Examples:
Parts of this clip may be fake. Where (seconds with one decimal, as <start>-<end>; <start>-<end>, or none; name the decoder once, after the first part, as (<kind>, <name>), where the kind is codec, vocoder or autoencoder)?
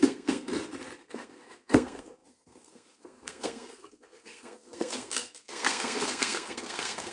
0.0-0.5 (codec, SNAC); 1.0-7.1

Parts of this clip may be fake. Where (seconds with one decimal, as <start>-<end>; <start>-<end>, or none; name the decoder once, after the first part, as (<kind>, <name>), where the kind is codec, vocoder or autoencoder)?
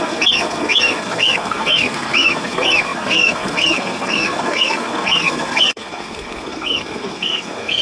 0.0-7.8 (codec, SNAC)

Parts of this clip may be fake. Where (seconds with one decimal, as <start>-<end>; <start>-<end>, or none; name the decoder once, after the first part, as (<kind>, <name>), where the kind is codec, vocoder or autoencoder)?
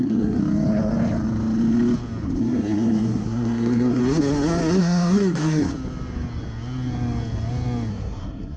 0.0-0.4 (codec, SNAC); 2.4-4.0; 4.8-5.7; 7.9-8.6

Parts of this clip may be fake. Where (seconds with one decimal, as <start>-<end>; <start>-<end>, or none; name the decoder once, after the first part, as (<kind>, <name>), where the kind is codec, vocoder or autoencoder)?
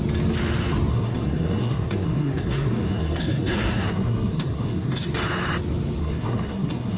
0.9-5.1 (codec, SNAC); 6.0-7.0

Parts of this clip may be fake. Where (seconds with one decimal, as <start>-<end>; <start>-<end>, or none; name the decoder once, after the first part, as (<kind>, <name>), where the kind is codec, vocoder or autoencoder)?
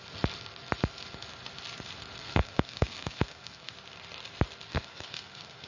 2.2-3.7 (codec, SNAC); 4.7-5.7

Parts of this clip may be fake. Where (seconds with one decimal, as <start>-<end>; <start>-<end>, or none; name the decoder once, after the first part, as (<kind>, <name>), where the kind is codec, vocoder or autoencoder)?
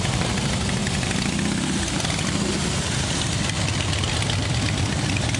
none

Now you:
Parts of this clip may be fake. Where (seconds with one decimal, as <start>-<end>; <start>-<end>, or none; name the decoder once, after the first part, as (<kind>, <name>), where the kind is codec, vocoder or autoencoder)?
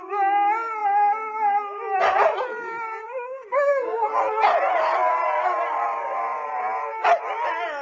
3.0-4.2 (codec, SNAC)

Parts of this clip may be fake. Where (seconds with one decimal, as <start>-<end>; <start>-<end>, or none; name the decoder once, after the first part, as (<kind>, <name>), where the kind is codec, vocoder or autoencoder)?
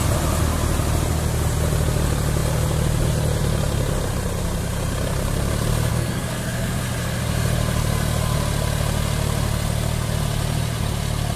5.9-6.8 (codec, SNAC)